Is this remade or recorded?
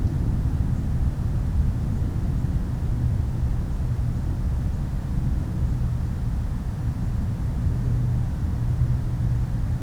recorded